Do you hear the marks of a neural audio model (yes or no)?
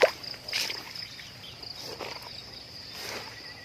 no